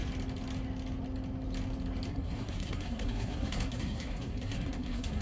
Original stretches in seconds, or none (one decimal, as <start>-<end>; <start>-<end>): 0.0-2.1